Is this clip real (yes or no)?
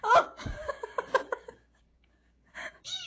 no